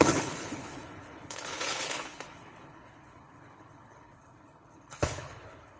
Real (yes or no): no